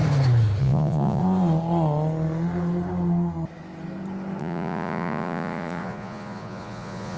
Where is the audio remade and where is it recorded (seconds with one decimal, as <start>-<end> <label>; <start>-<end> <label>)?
0.0-0.6 recorded; 0.6-1.2 remade; 1.2-4.4 recorded; 4.4-7.2 remade